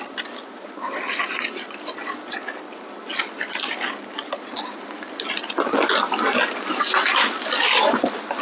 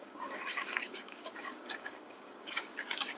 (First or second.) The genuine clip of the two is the first